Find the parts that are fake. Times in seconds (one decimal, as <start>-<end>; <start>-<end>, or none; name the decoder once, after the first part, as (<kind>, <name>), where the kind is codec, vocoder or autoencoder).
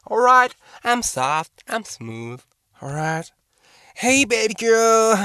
3.7-4.5 (autoencoder, DAC-VAE)